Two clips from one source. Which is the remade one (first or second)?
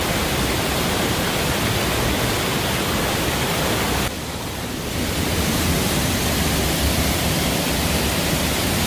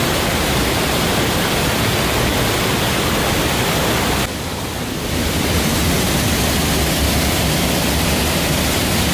first